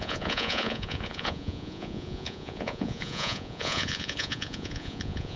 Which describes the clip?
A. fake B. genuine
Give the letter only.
A